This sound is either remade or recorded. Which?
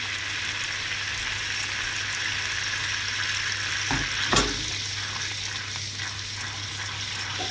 recorded